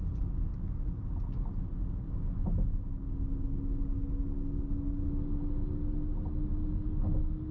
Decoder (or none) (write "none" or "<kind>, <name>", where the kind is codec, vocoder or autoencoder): none